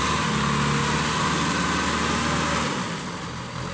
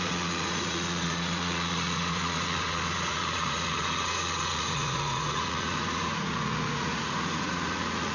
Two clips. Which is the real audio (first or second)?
first